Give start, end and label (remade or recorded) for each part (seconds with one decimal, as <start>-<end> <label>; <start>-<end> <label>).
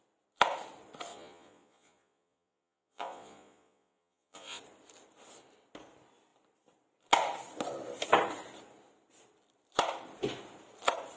0.0-1.1 recorded; 1.1-4.6 remade; 4.6-11.2 recorded